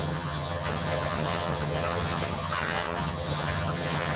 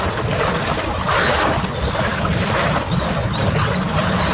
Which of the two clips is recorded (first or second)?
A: second